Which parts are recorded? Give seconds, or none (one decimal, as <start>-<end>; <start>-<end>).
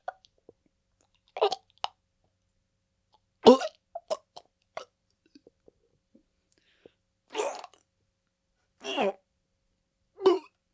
0.0-4.3